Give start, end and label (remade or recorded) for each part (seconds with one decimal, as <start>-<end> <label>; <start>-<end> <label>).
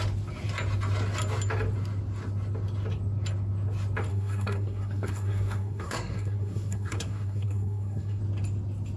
0.0-4.1 recorded; 4.1-8.2 remade; 8.2-9.0 recorded